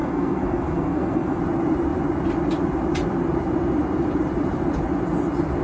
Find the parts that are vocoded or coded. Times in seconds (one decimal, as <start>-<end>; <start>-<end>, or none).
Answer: 0.0-1.4